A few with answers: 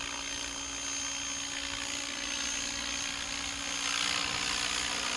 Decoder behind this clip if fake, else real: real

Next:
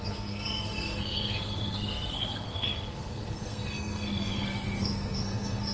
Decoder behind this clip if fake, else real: fake, codec, SNAC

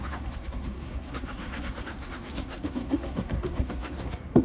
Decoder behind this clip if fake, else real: fake, codec, SNAC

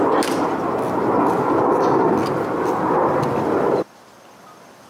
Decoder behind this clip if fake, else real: real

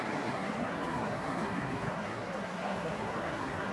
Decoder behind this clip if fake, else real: fake, codec, SNAC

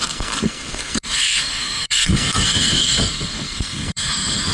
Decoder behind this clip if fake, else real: fake, codec, SNAC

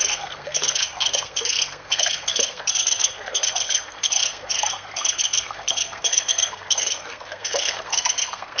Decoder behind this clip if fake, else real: fake, codec, SNAC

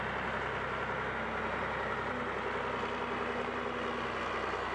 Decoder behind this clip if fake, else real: real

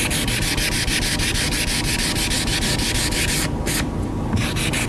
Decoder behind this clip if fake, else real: real